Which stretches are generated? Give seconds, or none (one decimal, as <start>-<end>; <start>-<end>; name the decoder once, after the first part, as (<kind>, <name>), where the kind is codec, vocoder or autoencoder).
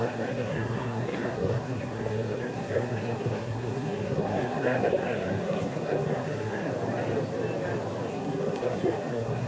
0.0-6.7 (codec, SNAC); 8.1-9.5